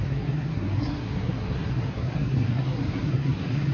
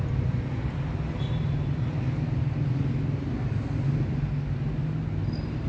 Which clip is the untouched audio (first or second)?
second